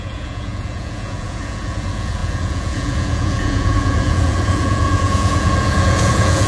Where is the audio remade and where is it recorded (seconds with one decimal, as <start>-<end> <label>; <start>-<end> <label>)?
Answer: 0.0-6.5 remade